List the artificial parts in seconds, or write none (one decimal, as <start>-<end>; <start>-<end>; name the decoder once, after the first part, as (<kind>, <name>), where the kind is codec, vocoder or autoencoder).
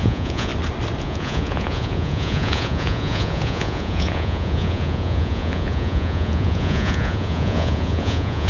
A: 0.0-0.5 (vocoder, Vocos); 1.0-8.5